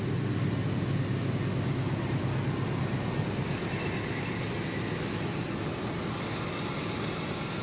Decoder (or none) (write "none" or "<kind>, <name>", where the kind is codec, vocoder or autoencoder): none